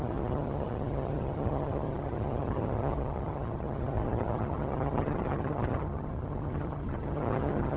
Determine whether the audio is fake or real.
fake